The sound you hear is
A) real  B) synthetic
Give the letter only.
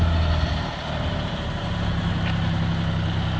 A